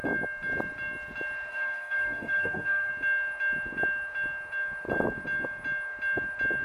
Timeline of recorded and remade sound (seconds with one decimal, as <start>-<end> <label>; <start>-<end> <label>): 0.0-1.5 recorded; 1.5-2.9 remade; 2.9-6.6 recorded